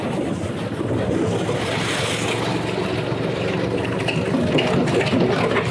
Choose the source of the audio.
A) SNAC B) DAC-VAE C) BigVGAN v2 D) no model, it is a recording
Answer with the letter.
D